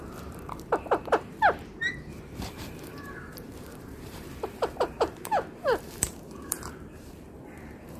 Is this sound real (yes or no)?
no